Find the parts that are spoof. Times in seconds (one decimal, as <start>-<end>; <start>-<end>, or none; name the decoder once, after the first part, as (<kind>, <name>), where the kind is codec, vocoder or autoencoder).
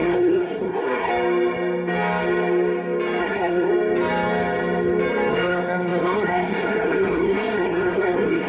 0.0-1.1 (codec, SNAC); 3.2-3.7; 5.3-8.5